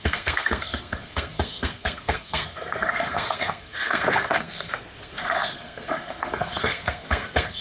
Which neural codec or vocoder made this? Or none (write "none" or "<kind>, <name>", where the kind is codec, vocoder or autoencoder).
codec, SNAC